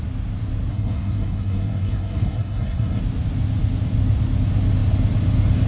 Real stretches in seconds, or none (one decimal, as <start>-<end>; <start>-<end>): 0.0-0.7; 3.0-5.7